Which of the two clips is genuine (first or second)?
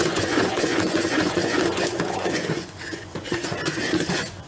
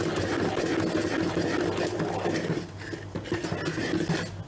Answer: second